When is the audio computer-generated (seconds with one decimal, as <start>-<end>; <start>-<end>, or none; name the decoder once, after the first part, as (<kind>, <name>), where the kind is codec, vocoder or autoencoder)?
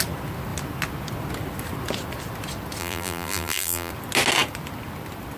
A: 2.8-3.9 (vocoder, BigVGAN v2)